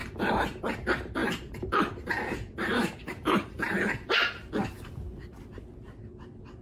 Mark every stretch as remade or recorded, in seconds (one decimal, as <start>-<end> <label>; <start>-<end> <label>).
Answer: 0.0-0.6 remade; 0.6-1.2 recorded; 1.2-4.5 remade; 4.5-6.6 recorded